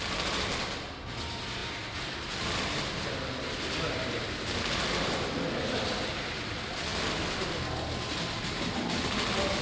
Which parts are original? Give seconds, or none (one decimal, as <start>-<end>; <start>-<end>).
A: 0.0-9.6